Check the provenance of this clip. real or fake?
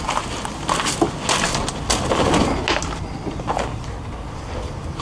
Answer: real